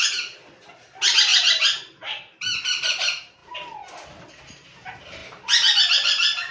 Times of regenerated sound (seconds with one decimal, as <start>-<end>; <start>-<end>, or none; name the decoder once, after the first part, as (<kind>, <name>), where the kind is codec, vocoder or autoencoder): none

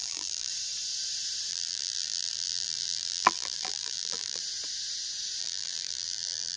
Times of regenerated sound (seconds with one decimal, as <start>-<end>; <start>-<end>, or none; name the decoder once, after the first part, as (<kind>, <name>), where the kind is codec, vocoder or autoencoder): 0.0-0.5 (vocoder, BigVGAN v2); 1.5-4.4; 5.4-6.6

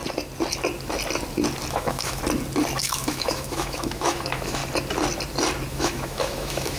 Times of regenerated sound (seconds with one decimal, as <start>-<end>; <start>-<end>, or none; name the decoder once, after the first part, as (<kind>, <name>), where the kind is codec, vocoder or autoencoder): 1.7-2.2 (autoencoder, DAC-VAE); 2.8-4.6; 5.7-6.8

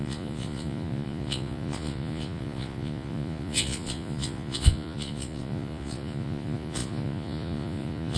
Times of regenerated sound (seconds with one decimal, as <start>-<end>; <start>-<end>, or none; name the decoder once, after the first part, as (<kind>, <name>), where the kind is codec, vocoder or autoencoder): 0.0-8.2 (vocoder, Vocos)